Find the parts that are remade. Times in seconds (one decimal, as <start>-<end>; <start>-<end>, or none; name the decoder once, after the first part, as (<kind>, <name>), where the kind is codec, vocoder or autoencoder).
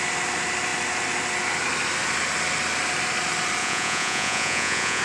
3.6-5.0 (vocoder, Vocos)